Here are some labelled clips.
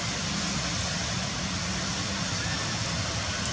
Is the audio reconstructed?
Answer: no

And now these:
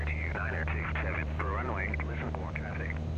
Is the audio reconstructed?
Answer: yes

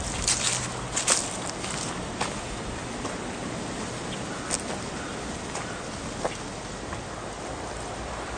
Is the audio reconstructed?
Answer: no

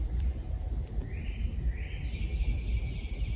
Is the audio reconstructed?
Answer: no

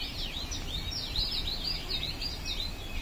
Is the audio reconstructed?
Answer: no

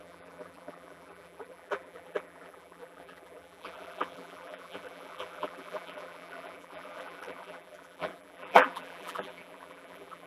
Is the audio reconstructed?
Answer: yes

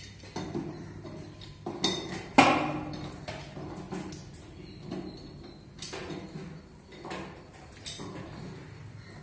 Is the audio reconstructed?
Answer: no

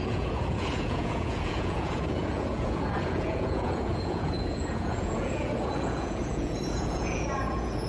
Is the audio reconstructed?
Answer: yes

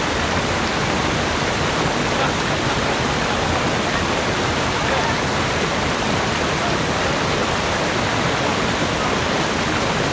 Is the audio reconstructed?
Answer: no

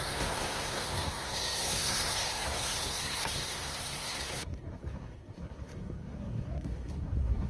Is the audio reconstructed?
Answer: yes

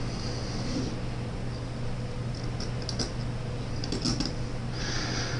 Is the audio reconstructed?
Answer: no